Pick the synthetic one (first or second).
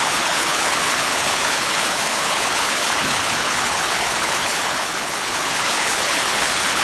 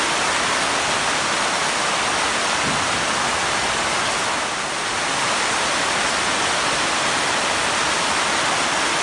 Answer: first